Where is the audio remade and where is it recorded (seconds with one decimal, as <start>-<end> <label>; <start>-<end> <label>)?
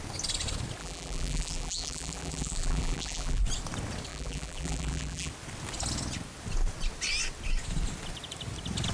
0.0-0.8 recorded; 0.8-3.4 remade; 3.4-4.1 recorded; 4.1-5.3 remade; 5.3-8.9 recorded